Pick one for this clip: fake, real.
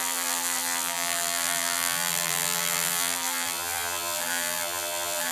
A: fake